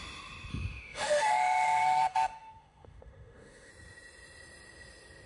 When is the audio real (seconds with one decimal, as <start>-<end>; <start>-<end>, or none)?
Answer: 0.0-0.5; 3.7-5.3

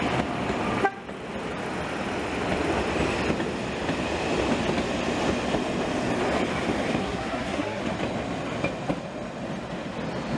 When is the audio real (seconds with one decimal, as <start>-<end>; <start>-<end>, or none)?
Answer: 0.0-7.0; 7.8-10.4